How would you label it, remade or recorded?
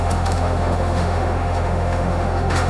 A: remade